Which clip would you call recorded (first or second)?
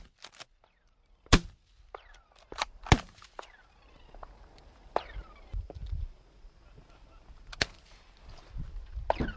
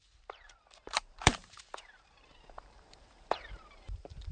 first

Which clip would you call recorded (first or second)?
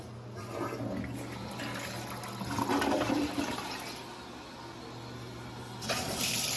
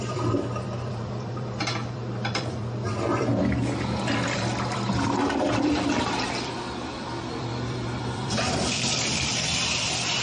first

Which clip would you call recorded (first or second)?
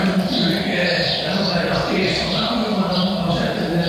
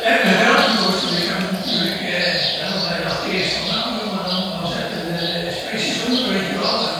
second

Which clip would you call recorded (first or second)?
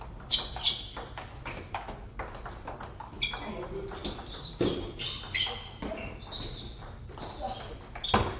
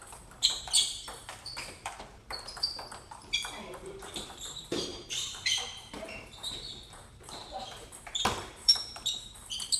first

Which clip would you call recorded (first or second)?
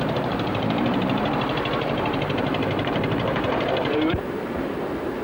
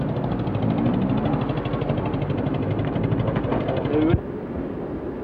second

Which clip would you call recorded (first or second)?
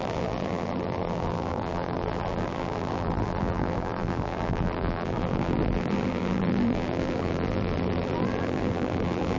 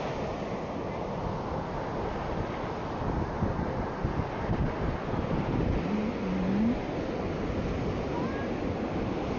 second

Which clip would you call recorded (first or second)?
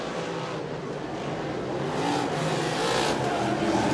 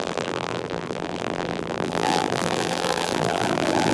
first